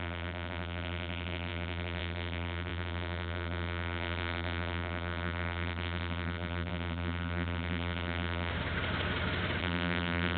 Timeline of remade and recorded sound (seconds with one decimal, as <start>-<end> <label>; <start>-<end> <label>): 0.0-8.5 remade; 8.5-9.6 recorded; 9.6-10.4 remade